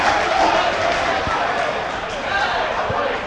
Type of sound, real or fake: fake